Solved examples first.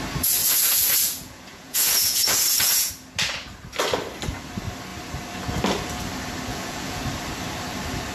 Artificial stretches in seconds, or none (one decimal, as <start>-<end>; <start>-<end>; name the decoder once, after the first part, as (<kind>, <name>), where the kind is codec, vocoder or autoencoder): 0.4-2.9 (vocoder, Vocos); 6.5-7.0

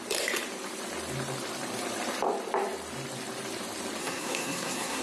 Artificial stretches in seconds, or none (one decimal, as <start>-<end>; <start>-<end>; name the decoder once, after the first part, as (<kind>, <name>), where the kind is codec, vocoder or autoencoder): 4.0-5.0 (codec, SNAC)

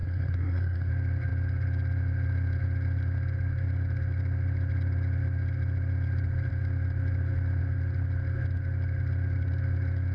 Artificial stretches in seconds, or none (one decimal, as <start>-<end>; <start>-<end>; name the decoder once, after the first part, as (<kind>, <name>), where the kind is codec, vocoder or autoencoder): 0.0-0.9 (codec, SNAC)

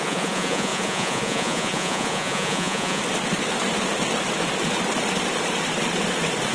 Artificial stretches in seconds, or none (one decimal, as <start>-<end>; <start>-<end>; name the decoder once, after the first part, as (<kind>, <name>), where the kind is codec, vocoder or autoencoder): 0.0-3.0 (vocoder, Vocos)